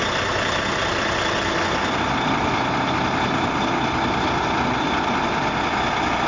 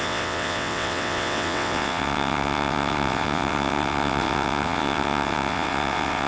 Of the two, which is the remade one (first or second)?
second